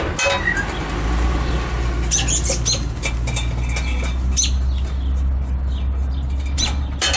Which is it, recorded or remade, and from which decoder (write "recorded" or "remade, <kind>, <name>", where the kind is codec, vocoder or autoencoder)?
recorded